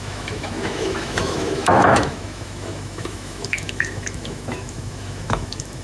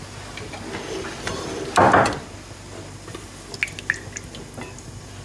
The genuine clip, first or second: second